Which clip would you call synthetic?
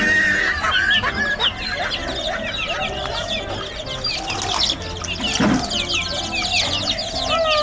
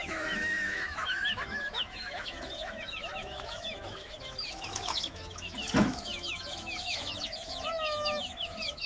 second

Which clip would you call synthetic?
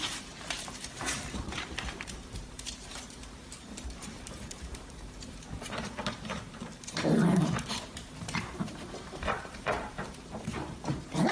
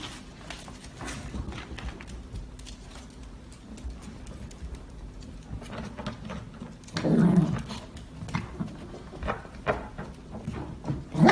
first